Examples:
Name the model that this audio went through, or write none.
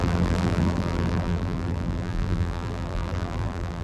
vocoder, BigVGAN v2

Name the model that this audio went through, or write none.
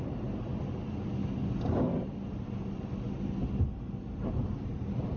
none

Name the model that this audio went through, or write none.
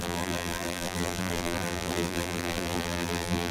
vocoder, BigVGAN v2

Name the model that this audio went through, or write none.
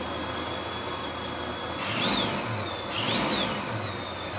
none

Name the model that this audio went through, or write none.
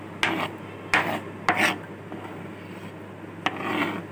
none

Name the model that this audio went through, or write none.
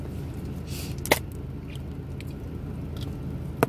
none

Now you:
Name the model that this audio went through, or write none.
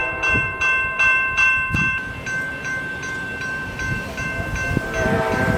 vocoder, BigVGAN v2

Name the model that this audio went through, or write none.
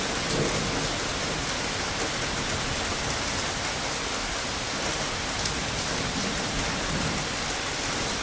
none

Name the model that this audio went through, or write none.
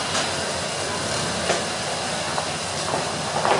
none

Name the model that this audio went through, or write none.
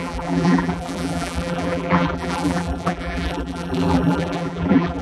vocoder, BigVGAN v2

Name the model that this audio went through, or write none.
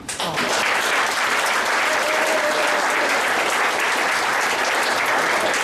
vocoder, BigVGAN v2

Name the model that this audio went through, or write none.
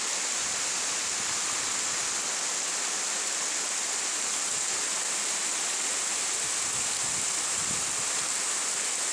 none